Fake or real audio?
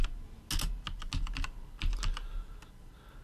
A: real